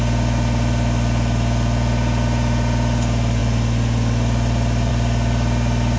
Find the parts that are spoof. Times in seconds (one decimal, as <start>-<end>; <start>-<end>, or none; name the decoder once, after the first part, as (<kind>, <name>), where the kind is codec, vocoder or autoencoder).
none